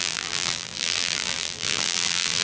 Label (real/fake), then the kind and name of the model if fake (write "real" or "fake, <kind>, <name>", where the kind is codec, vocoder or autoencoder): fake, vocoder, BigVGAN v2